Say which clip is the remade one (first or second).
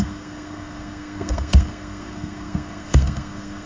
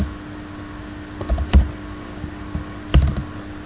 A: first